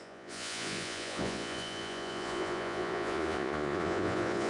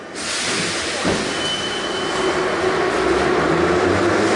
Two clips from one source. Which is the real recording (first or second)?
second